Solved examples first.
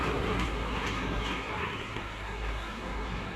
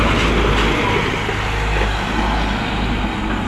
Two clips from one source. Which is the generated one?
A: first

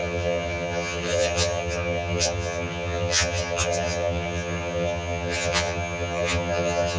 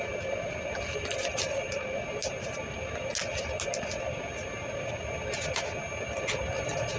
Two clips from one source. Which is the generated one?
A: first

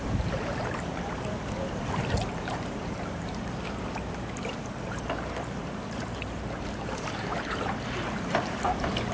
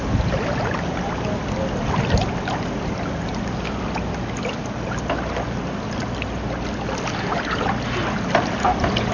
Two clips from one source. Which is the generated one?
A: first